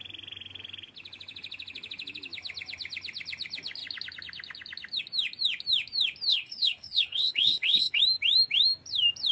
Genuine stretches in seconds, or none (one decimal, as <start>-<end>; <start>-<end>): 0.0-6.3; 8.0-9.3